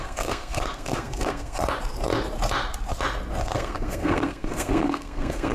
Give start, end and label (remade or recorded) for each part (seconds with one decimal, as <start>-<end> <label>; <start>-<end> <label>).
0.0-1.6 remade; 1.6-3.4 recorded; 3.4-5.5 remade